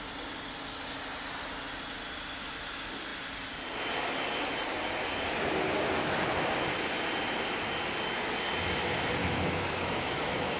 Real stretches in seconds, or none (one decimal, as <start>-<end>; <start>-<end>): 0.0-9.2